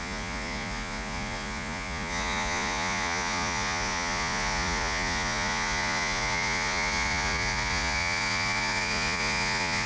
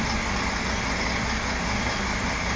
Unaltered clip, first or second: second